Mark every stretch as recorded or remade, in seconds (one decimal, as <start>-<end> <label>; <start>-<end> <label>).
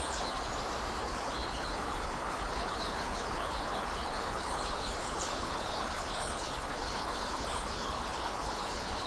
0.0-0.5 remade; 0.5-1.0 recorded; 1.0-9.1 remade